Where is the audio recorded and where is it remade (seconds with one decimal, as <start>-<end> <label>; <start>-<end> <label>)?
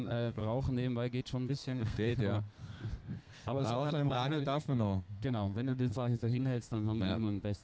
0.0-0.4 remade; 0.4-1.5 recorded; 1.5-2.1 remade; 2.1-3.2 recorded; 3.2-7.6 remade